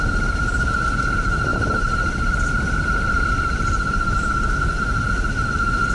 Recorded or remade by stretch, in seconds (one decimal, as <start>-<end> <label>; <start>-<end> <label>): 0.0-1.5 recorded; 1.5-4.8 remade; 4.8-5.9 recorded